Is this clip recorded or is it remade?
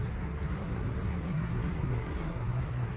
remade